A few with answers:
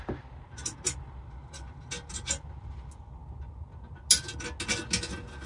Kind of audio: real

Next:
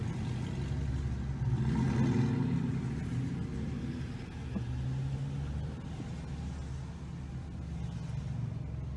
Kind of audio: real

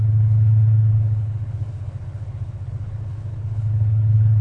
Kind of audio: fake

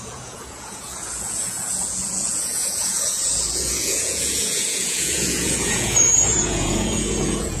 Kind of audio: fake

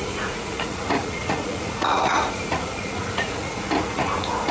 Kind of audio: fake